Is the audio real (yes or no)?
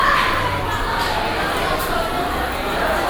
yes